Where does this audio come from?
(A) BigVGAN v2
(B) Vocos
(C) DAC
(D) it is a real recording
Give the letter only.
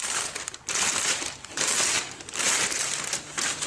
A